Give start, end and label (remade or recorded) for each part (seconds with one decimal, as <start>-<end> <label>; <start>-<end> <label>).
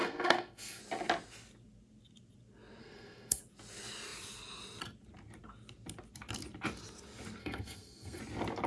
0.0-0.8 remade; 0.8-2.8 recorded; 2.8-3.4 remade; 3.4-7.4 recorded; 7.4-8.2 remade; 8.2-8.7 recorded